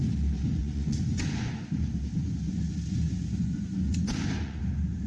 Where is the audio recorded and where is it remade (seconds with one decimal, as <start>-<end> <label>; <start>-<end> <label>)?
0.0-0.6 recorded; 0.6-1.6 remade; 1.6-3.4 recorded; 3.4-4.6 remade; 4.6-5.1 recorded